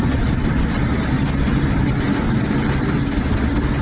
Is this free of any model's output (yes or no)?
yes